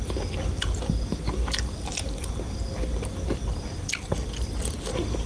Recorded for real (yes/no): yes